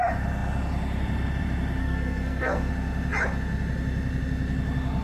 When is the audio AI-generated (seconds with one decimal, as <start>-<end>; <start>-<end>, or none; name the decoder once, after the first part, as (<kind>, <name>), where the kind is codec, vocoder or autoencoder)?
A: 1.8-2.7 (codec, SNAC)